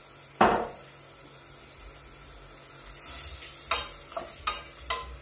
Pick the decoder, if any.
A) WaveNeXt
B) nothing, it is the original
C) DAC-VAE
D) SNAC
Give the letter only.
B